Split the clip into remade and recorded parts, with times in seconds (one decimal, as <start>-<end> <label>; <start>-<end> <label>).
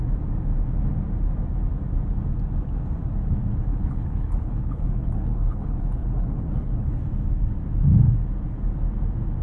0.0-3.7 recorded; 3.7-7.0 remade; 7.0-9.4 recorded